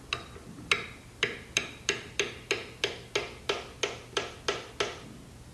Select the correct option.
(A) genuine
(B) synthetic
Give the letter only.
A